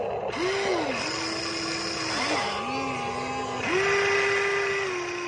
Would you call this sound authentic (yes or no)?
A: yes